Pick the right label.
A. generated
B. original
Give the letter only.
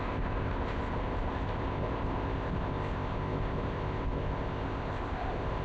A